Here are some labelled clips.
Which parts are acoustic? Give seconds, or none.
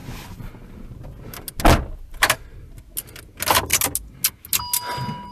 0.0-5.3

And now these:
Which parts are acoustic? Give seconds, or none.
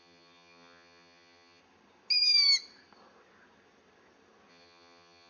1.6-4.5